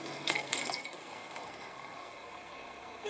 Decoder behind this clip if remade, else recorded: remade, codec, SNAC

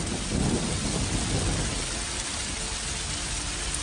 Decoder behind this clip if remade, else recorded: recorded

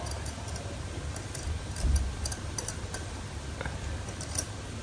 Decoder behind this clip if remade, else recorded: recorded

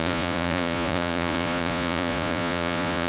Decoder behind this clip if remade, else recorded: remade, vocoder, Vocos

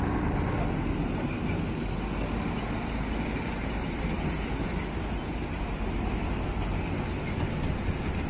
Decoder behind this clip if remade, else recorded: recorded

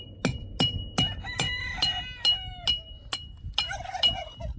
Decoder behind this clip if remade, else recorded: recorded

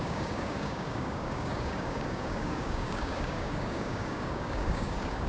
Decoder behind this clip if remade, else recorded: remade, codec, DAC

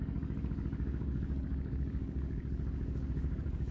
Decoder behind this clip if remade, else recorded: remade, codec, DAC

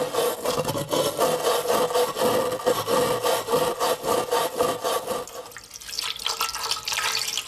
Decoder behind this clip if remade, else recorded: recorded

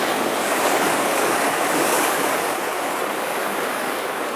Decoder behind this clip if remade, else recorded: remade, codec, DAC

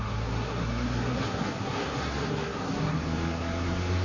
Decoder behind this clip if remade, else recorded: remade, codec, SNAC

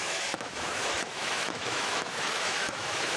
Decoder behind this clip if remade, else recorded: remade, autoencoder, DAC-VAE